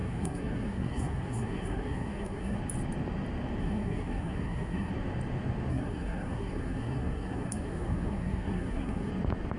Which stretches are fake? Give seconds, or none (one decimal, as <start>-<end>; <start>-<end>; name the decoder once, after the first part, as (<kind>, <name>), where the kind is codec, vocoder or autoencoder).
0.0-2.6 (codec, SNAC); 3.6-4.9; 5.7-9.1